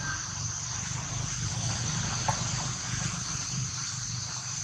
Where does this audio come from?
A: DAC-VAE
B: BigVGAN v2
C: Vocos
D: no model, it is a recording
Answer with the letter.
B